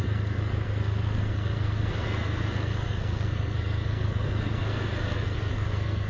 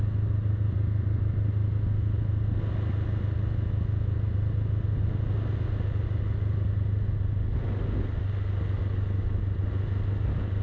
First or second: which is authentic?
second